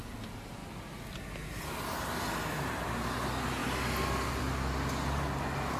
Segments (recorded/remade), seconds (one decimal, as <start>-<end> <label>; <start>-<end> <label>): 0.0-5.8 recorded